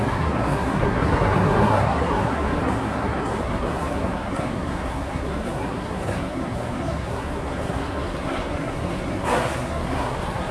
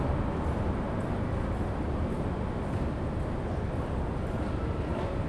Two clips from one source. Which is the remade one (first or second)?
first